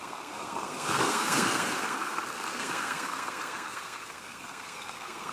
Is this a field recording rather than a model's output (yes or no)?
no